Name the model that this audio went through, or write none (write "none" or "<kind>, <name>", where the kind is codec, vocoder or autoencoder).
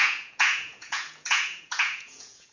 vocoder, Vocos